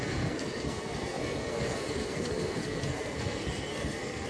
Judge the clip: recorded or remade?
remade